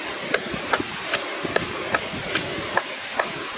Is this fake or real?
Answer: real